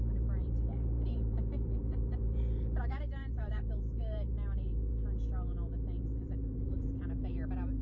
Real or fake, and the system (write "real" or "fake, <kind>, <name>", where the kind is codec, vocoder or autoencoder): fake, vocoder, BigVGAN v2